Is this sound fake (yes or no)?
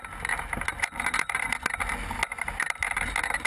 no